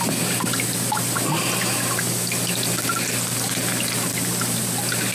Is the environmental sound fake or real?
real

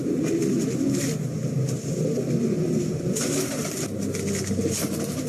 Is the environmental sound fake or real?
real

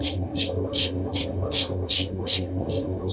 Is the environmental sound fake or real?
fake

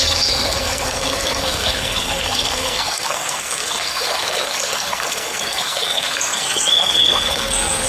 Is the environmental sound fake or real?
fake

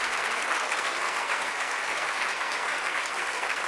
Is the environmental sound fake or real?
fake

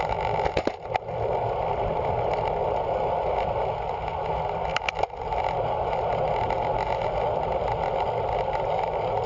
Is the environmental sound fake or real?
real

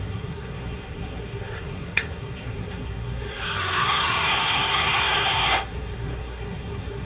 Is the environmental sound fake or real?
fake